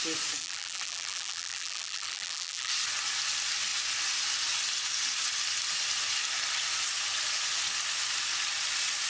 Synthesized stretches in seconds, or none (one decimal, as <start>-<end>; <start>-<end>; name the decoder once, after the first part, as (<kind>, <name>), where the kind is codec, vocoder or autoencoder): 0.4-2.7 (vocoder, BigVGAN v2)